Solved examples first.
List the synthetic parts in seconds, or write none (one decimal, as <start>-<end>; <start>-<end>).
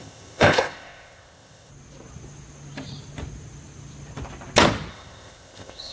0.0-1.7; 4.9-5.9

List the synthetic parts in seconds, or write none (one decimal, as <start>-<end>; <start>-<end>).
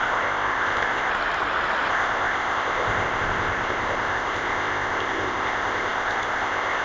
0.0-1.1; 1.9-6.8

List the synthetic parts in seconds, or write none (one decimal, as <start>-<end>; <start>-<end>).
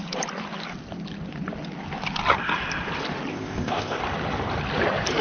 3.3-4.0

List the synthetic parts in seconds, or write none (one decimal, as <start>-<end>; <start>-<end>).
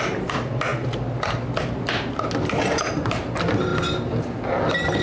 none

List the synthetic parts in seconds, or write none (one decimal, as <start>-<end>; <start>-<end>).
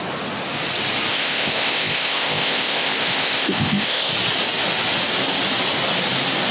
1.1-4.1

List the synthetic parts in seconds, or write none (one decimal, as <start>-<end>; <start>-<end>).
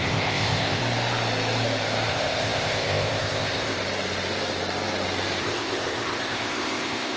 0.0-0.8; 2.1-3.8; 5.4-7.2